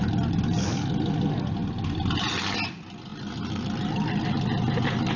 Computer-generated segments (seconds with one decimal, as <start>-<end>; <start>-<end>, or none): none